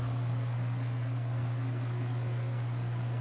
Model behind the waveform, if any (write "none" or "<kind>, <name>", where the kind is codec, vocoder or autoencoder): codec, SNAC